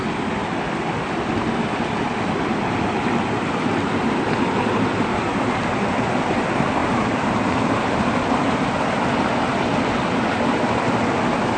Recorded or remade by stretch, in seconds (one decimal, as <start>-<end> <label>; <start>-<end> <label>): 0.0-11.6 recorded